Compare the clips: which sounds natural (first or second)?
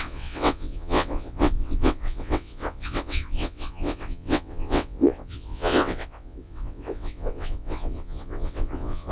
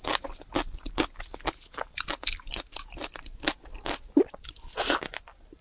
second